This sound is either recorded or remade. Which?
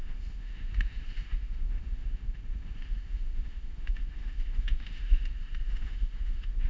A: remade